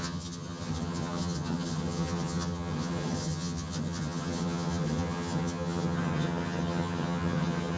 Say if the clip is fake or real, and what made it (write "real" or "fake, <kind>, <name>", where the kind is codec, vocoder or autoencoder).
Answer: fake, vocoder, HiFi-GAN